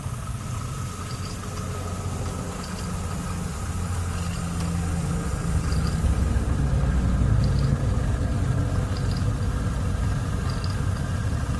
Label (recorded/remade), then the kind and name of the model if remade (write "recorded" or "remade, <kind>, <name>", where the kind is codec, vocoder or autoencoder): recorded